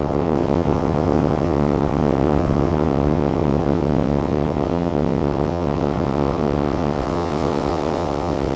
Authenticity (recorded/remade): remade